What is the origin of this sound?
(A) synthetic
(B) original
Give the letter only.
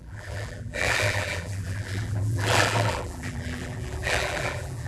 A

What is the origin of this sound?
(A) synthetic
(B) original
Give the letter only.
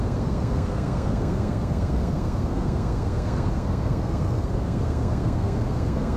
A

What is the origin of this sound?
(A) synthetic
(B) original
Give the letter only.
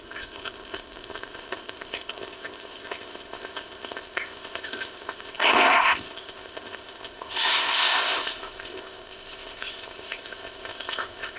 A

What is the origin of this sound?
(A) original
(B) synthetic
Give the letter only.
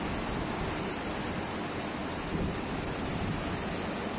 A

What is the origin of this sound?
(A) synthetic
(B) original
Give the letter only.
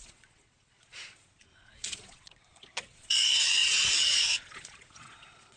A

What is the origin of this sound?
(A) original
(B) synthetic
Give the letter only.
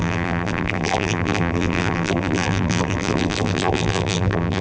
B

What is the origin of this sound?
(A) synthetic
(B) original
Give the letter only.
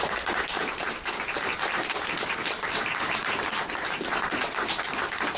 A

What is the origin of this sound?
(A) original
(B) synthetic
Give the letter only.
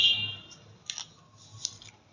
A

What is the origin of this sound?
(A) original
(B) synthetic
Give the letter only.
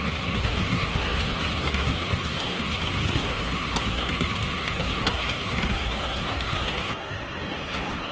B